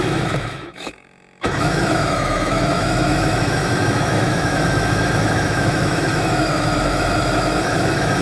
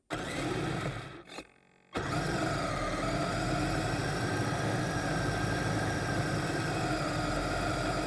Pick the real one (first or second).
second